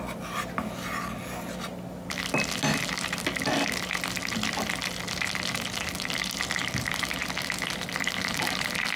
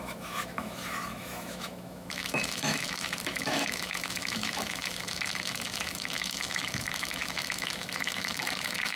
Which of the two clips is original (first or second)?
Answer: first